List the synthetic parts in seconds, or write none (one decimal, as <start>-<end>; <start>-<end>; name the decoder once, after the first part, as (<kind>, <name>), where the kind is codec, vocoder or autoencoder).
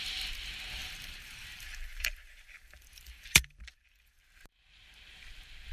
0.8-4.2 (vocoder, BigVGAN v2)